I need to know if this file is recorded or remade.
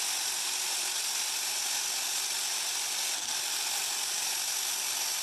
recorded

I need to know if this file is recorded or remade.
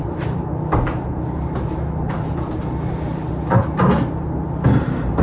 recorded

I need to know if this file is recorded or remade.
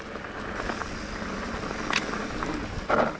recorded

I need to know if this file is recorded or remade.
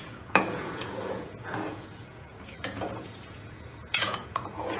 remade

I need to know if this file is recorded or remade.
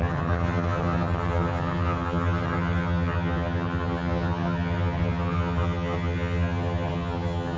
remade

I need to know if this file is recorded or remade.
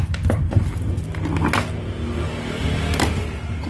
recorded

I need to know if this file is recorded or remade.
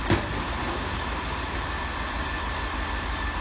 recorded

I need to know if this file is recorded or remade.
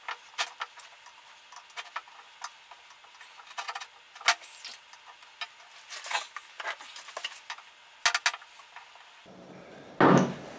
recorded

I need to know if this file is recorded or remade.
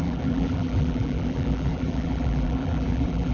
remade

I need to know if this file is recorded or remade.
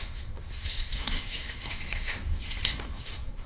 remade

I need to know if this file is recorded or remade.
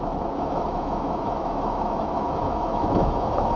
remade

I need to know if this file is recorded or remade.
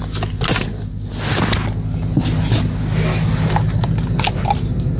recorded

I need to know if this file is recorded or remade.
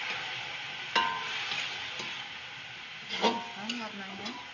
recorded